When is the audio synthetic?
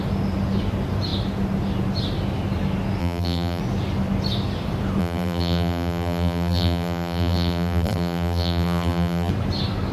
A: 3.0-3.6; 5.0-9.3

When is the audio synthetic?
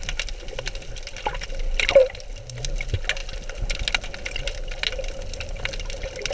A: none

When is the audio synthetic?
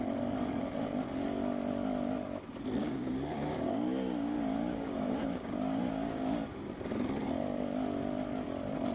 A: 2.8-6.7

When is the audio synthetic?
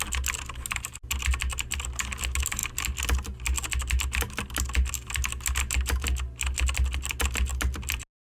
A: none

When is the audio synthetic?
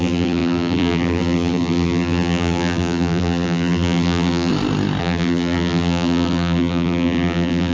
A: 0.0-4.5; 5.0-7.7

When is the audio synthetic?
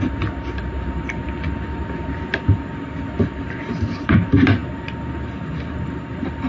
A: 0.0-1.2; 3.8-6.5